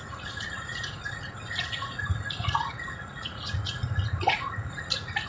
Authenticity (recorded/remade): remade